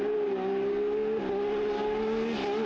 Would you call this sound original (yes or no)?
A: yes